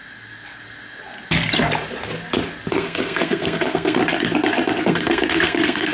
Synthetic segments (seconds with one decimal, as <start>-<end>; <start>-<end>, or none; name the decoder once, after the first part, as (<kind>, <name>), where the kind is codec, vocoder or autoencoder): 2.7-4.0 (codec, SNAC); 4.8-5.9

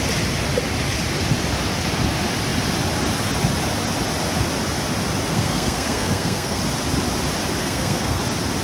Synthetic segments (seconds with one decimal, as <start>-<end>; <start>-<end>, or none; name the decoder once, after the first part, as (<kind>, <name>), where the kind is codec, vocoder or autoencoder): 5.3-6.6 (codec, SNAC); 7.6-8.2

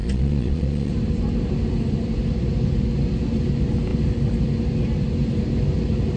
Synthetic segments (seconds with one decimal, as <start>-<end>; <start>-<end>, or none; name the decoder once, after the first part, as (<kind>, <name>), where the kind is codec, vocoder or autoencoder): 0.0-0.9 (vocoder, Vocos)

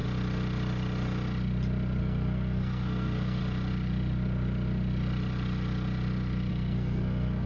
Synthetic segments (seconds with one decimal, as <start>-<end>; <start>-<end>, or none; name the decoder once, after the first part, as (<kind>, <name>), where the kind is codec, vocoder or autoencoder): 2.0-3.4 (codec, SNAC); 6.5-7.5

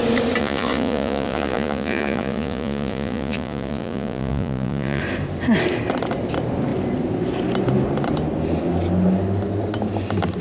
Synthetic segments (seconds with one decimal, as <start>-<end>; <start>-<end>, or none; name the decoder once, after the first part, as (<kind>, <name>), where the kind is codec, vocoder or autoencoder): 0.4-5.0 (vocoder, Vocos)

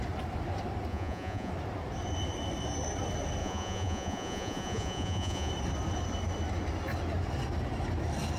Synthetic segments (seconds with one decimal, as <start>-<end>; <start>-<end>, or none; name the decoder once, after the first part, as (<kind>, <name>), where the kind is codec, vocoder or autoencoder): 0.9-1.5 (vocoder, Vocos); 3.4-5.5